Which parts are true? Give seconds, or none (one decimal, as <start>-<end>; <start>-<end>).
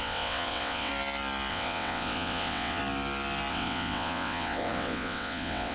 0.9-1.5; 2.8-3.5